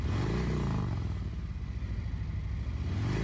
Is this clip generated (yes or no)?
no